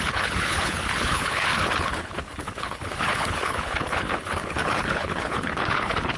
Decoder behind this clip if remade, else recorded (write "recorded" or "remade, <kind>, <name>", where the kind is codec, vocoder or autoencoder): remade, codec, HILCodec